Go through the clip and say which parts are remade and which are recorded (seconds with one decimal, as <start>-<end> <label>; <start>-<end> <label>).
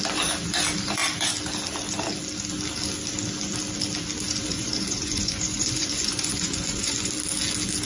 0.0-4.5 recorded; 4.5-7.1 remade; 7.1-7.9 recorded